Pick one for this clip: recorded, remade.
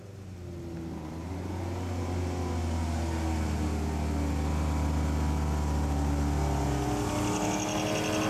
recorded